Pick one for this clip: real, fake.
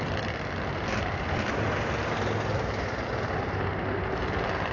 real